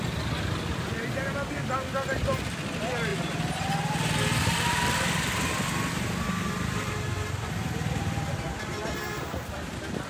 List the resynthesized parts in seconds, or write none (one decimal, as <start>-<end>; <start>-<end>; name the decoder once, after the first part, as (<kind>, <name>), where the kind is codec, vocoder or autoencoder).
none